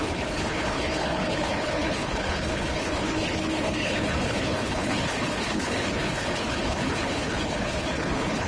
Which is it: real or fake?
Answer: fake